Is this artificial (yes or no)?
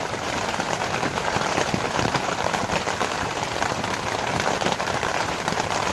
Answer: yes